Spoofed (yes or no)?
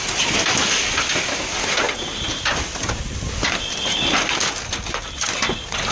no